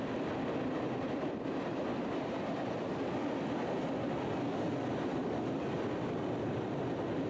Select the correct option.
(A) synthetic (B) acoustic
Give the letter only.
A